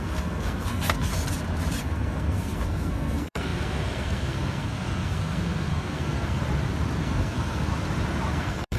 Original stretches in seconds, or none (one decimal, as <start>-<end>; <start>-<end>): 1.1-1.8; 6.4-7.0; 7.7-8.3